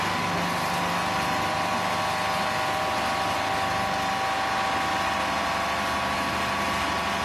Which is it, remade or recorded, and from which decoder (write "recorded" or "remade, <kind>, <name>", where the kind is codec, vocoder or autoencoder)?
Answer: recorded